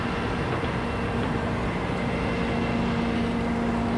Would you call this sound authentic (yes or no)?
yes